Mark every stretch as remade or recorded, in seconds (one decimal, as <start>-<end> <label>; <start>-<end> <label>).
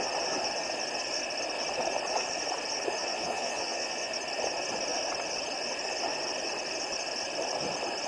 0.0-3.0 recorded; 3.0-4.1 remade; 4.1-8.1 recorded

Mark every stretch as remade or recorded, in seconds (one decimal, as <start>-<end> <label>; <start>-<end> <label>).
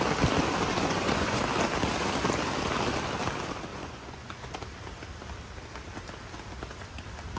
0.0-0.7 recorded; 0.7-1.4 remade; 1.4-3.7 recorded; 3.7-4.5 remade; 4.5-7.4 recorded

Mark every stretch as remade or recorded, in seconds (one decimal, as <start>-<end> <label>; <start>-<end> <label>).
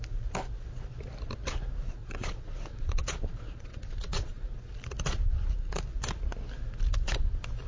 0.0-2.0 recorded; 2.0-4.7 remade; 4.7-7.7 recorded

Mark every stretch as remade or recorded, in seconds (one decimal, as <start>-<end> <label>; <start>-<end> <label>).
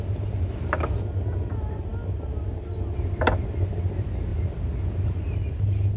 0.0-6.0 recorded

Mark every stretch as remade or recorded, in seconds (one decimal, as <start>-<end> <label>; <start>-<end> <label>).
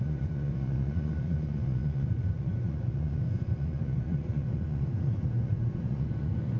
0.0-6.6 remade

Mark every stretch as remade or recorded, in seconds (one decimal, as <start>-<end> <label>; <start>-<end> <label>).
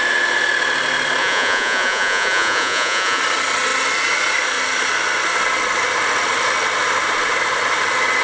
0.0-1.2 recorded; 1.2-3.2 remade; 3.2-8.2 recorded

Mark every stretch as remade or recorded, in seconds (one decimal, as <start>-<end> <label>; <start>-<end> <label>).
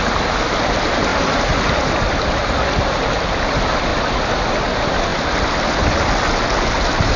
0.0-7.2 recorded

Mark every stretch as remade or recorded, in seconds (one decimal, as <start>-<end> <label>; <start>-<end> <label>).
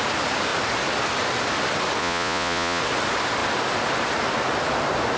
0.0-2.0 recorded; 2.0-2.8 remade; 2.8-5.2 recorded